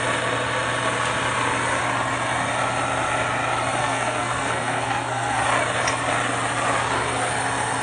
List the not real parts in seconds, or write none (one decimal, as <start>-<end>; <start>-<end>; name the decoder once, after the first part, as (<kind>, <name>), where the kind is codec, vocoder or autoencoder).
3.8-5.4 (codec, SNAC)